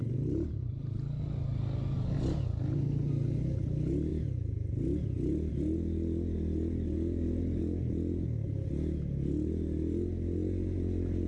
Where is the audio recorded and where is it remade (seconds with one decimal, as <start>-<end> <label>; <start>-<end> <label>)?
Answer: 0.0-11.3 recorded